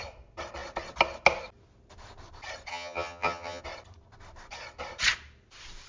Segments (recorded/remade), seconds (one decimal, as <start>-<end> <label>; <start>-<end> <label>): 0.0-2.7 recorded; 2.7-3.6 remade; 3.6-5.9 recorded